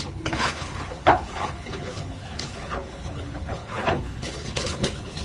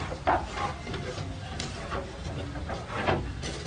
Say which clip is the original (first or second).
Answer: second